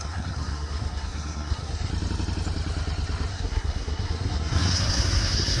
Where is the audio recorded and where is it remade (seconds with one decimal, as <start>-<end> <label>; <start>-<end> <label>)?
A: 0.0-1.9 remade; 1.9-3.3 recorded; 3.3-5.6 remade